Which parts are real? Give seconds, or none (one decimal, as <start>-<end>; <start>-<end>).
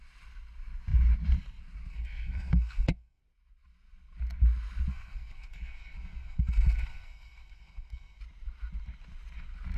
0.0-1.9; 3.2-4.9; 8.2-9.8